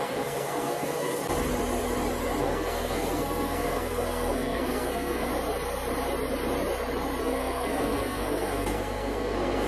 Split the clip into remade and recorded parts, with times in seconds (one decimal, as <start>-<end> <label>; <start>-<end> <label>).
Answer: 0.0-1.2 remade; 1.2-2.4 recorded; 2.4-5.3 remade; 5.3-7.2 recorded; 7.2-9.7 remade